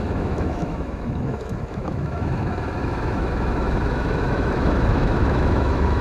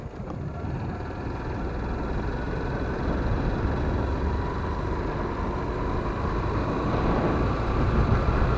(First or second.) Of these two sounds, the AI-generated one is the first